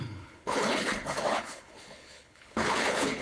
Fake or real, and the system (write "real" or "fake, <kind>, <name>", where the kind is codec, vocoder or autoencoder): fake, codec, HILCodec